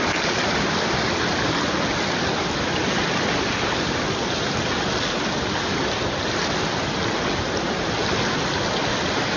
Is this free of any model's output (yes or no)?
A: yes